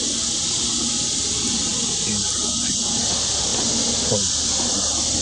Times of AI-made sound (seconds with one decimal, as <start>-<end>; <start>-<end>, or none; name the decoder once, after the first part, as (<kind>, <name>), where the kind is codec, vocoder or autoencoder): none

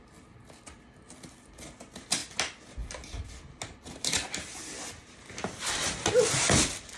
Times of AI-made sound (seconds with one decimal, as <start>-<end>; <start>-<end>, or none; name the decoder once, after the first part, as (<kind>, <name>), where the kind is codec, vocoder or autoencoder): none

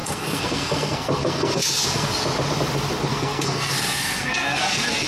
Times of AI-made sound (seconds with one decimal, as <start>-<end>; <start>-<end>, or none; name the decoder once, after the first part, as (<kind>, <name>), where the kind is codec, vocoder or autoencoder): 0.0-2.1 (codec, SNAC); 3.1-5.1